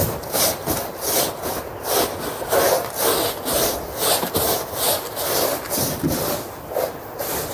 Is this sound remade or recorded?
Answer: recorded